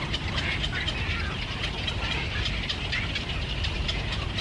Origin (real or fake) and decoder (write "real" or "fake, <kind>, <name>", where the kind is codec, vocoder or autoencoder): real